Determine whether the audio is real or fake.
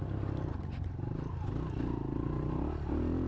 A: real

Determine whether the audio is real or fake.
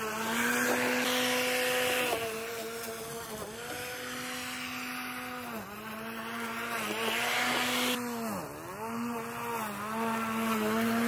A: real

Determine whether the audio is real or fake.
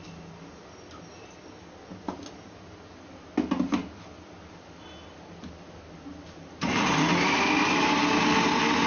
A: real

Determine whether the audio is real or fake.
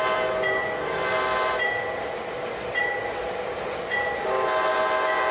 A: real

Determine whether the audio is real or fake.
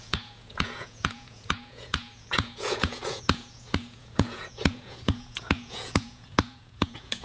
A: fake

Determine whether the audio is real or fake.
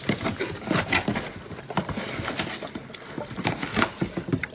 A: real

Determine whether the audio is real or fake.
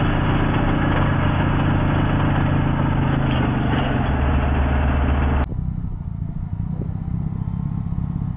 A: real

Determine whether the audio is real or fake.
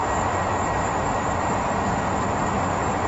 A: fake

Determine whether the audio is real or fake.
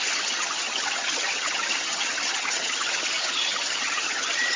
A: fake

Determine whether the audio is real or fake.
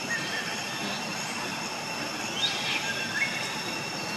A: real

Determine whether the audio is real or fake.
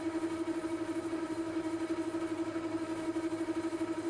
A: real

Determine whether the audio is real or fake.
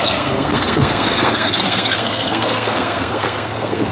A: fake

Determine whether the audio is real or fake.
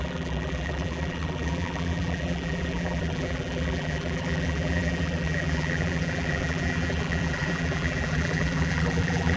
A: fake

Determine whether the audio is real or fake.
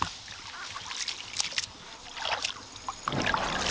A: real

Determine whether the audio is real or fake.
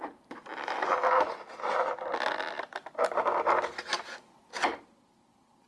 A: real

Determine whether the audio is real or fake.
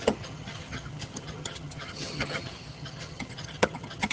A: fake